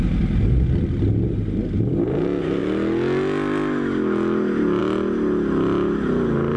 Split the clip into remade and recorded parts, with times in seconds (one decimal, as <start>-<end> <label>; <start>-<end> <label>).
0.0-6.6 recorded